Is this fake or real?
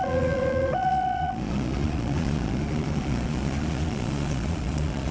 fake